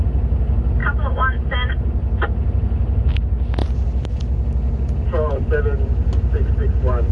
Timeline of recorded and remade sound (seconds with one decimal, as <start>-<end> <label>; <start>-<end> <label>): 0.0-0.8 recorded; 0.8-1.7 remade; 1.7-3.6 recorded; 3.6-5.6 remade; 5.6-7.1 recorded